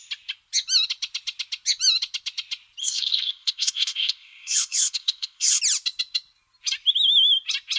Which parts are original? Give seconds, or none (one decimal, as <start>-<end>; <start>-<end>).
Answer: 0.0-2.8; 5.6-7.8